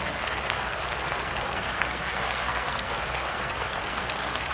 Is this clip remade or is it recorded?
remade